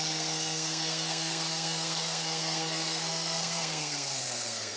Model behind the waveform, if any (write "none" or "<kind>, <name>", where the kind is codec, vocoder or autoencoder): codec, SNAC